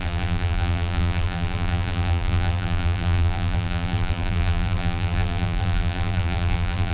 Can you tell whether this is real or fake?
fake